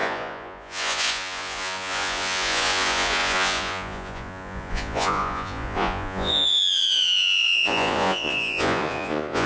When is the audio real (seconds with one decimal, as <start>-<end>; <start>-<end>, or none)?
none